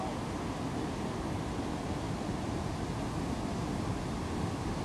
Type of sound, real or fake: real